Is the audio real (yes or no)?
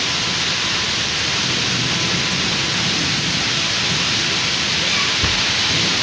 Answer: yes